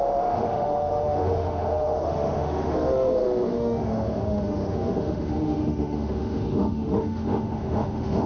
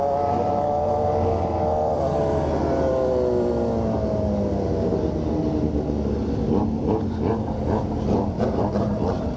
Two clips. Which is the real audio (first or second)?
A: second